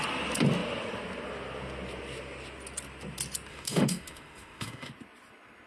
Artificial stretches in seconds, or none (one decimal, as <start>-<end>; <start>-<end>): 3.5-4.9